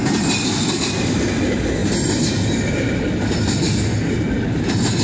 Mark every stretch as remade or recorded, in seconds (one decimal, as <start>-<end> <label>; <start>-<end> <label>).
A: 0.0-5.0 recorded